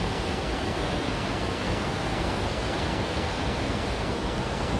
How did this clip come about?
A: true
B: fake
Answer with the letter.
B